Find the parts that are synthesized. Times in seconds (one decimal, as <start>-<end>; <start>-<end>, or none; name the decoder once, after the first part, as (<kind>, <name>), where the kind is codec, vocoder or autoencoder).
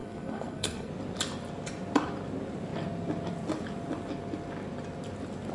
0.0-0.9 (codec, SNAC)